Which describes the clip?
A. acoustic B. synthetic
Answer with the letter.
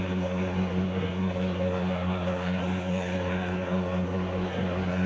B